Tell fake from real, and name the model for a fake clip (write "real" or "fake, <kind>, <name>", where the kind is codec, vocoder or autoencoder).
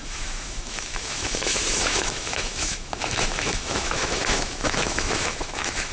fake, autoencoder, DAC-VAE